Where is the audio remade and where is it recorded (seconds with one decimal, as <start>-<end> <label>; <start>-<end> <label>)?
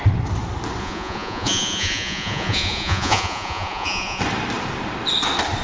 0.0-0.8 recorded; 0.8-4.2 remade; 4.2-5.6 recorded